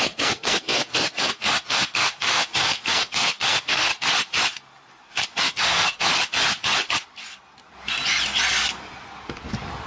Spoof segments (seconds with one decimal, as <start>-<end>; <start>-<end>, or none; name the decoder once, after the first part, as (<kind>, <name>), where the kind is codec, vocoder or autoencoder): 0.0-3.9 (codec, SNAC); 5.4-6.1